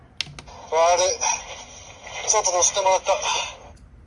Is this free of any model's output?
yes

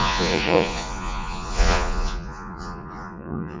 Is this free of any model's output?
no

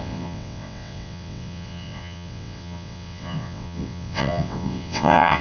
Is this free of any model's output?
no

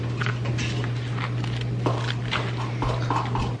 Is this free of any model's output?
yes